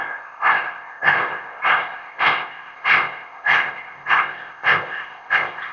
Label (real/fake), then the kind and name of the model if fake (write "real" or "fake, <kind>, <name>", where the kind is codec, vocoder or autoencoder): fake, codec, ZipCodec